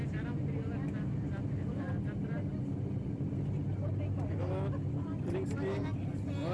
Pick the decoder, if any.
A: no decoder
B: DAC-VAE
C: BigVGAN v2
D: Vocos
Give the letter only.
A